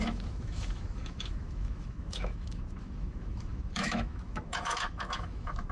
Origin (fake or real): fake